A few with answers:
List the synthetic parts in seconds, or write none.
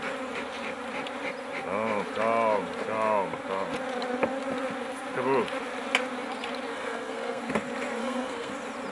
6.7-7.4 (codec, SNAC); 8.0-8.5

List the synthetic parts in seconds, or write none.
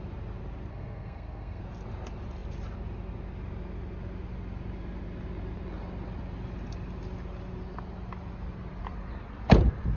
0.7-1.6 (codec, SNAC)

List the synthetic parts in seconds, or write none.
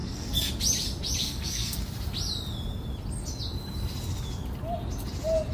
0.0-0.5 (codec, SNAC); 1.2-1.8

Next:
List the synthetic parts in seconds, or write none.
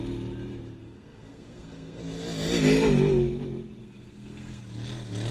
0.8-2.0 (codec, SNAC); 3.8-4.6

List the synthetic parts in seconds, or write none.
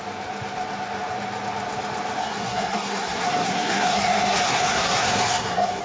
2.2-5.8 (codec, SNAC)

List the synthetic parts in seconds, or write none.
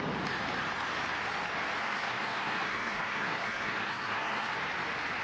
1.8-4.5 (codec, SNAC)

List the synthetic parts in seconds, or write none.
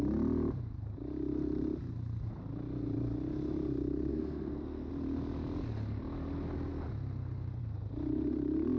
4.1-4.9 (codec, SNAC)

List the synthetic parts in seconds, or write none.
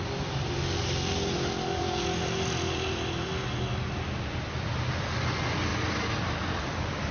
none